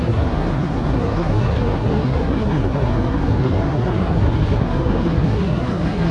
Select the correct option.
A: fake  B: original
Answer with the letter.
A